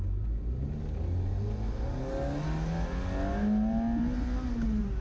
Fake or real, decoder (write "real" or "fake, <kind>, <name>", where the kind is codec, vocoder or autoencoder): real